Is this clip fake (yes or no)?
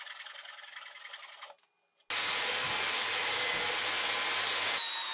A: no